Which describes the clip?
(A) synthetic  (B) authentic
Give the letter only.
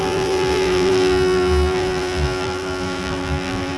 A